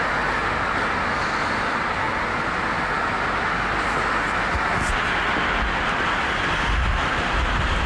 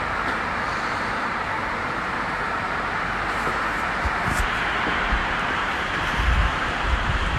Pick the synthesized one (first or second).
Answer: second